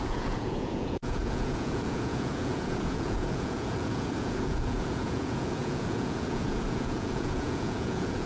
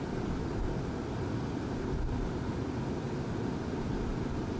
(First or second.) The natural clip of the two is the second